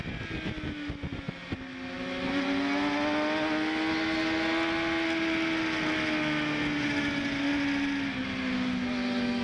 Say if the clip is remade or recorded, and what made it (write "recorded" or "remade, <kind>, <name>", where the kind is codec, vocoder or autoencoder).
recorded